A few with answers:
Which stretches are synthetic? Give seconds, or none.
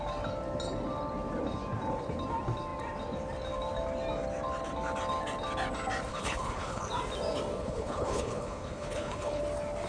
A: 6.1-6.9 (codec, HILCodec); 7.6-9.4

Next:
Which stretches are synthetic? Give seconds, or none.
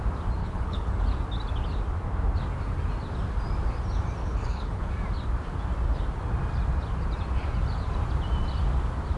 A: 0.4-0.9 (codec, HILCodec); 4.2-4.9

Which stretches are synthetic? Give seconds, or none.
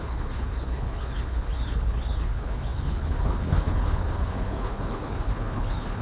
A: 0.0-6.0 (codec, HILCodec)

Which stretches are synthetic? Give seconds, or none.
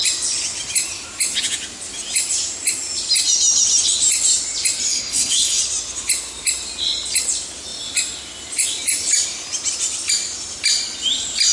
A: 4.9-5.6 (codec, HILCodec)